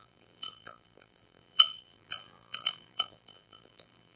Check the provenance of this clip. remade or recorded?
remade